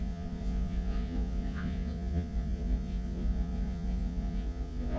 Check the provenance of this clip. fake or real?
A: fake